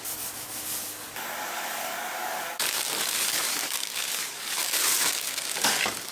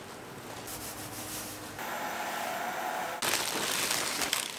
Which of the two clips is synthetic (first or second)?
first